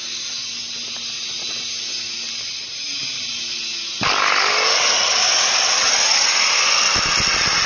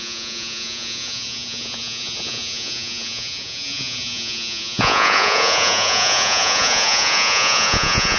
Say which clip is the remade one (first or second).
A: second